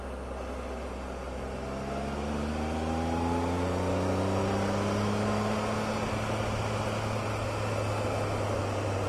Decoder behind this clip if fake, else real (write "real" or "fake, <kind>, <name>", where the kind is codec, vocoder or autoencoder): real